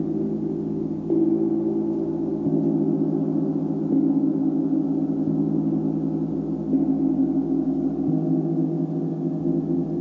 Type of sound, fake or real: real